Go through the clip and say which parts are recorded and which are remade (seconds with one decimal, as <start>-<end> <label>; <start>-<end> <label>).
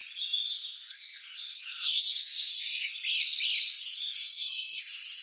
0.0-0.9 recorded; 0.9-2.9 remade; 2.9-3.8 recorded; 3.8-5.2 remade